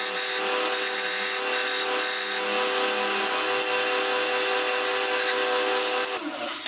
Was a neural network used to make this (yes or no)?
no